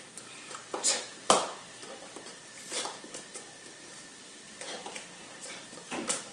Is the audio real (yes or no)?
yes